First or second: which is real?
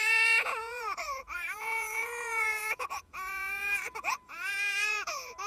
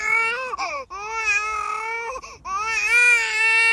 second